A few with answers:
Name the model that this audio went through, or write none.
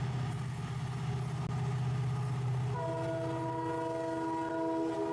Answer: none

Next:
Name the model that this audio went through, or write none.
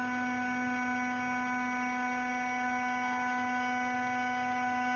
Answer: none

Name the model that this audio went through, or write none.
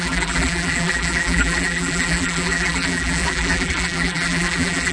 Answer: vocoder, BigVGAN v2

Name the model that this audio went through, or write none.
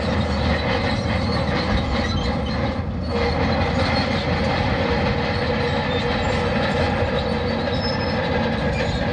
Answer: none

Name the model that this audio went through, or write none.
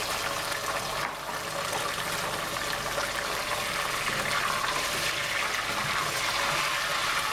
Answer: none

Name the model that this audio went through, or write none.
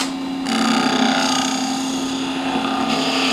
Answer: none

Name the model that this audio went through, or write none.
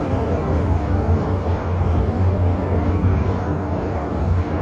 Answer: codec, DAC